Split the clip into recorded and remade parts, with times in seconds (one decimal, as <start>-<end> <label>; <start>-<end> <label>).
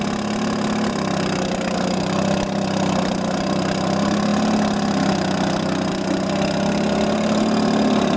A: 0.0-8.2 recorded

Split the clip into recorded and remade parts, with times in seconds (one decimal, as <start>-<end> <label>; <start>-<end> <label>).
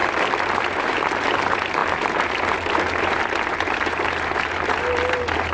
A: 0.0-0.8 remade; 0.8-1.8 recorded; 1.8-2.3 remade; 2.3-5.5 recorded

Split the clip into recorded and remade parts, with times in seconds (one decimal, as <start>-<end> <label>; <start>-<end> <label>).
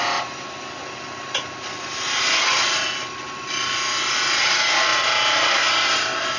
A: 0.0-6.4 recorded